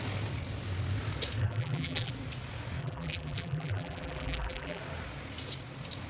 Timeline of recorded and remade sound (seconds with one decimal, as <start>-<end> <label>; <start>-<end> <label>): 0.0-1.4 recorded; 1.4-2.1 remade; 2.1-2.8 recorded; 2.8-4.8 remade; 4.8-6.1 recorded